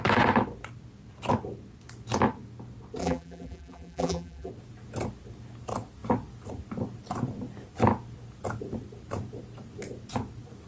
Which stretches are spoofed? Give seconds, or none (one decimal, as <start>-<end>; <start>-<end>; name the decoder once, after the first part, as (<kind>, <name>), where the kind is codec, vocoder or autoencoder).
3.0-4.5 (vocoder, BigVGAN v2)